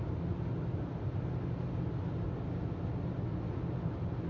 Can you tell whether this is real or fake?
real